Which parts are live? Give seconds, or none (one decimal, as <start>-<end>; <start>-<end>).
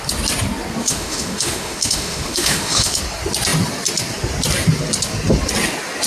0.0-0.8; 3.0-6.1